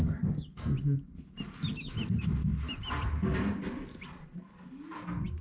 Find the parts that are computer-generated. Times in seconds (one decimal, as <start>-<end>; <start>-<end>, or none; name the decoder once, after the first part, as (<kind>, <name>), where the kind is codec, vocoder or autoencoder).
none